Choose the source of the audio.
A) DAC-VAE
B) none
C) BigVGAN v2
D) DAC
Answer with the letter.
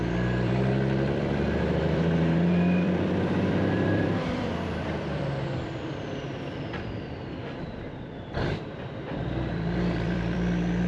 C